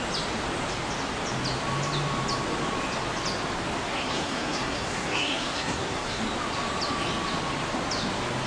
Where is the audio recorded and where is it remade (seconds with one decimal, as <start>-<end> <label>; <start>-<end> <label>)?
0.0-3.9 recorded; 3.9-6.2 remade; 6.2-8.5 recorded